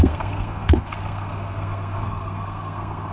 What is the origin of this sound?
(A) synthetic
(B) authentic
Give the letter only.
A